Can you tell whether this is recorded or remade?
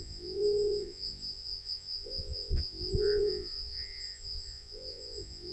remade